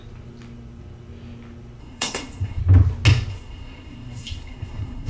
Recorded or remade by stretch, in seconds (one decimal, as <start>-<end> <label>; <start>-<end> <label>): 0.0-1.8 recorded; 1.8-2.6 remade; 2.6-3.3 recorded; 3.3-5.1 remade